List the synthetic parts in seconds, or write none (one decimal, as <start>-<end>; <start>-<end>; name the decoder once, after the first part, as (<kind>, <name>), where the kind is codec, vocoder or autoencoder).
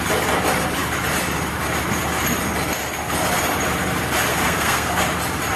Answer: 4.3-5.0 (codec, SNAC)